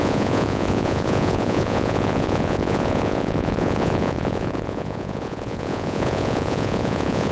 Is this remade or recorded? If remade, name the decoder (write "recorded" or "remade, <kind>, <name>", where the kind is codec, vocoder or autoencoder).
remade, vocoder, Vocos